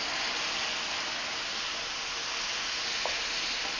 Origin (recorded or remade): recorded